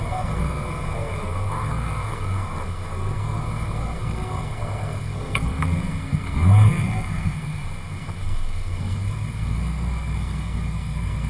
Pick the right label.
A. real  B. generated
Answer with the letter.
B